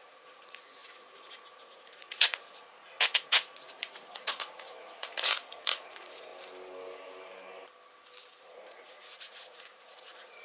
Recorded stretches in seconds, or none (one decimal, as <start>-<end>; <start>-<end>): 6.3-8.4